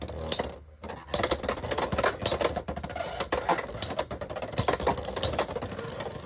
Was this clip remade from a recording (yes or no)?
no